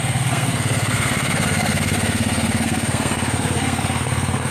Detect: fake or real fake